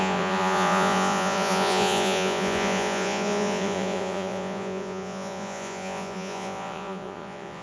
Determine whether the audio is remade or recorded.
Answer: remade